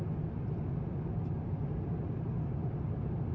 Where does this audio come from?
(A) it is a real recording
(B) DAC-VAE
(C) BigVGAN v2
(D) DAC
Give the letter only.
A